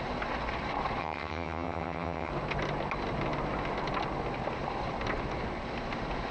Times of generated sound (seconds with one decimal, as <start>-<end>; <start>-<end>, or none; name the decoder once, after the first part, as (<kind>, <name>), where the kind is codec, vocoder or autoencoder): 1.0-2.3 (vocoder, HiFi-GAN)